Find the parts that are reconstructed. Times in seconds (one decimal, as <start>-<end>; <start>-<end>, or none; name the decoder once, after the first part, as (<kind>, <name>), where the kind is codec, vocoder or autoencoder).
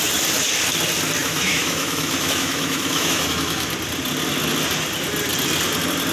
1.2-3.7 (autoencoder, DAC-VAE)